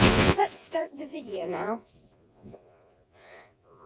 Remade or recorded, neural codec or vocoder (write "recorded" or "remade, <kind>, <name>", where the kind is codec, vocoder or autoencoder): remade, vocoder, Vocos